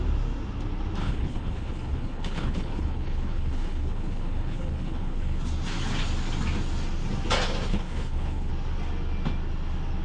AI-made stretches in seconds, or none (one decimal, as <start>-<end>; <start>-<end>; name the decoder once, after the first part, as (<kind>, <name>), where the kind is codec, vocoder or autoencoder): 1.0-5.4 (codec, HILCodec); 7.7-8.5